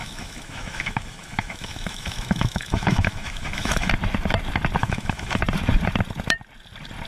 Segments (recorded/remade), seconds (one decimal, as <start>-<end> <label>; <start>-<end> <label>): 0.0-3.9 remade; 3.9-4.8 recorded; 4.8-5.4 remade; 5.4-7.1 recorded